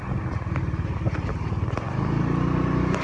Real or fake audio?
real